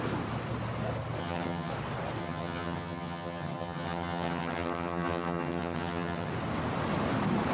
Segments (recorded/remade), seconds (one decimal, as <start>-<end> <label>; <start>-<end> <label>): 0.0-1.2 recorded; 1.2-1.7 remade; 1.7-2.2 recorded; 2.2-6.3 remade; 6.3-7.5 recorded